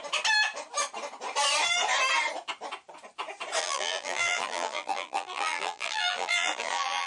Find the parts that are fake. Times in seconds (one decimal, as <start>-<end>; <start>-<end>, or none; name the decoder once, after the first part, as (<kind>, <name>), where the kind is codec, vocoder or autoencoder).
3.6-7.1 (vocoder, BigVGAN v2)